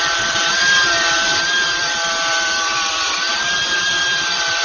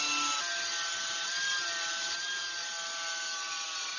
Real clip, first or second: second